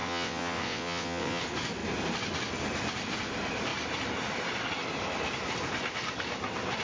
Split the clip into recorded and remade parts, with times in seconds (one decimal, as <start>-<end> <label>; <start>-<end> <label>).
0.0-1.4 remade; 1.4-6.8 recorded